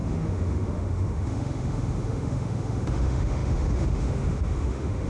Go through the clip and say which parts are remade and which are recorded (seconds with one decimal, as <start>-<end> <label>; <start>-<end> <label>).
0.0-5.1 remade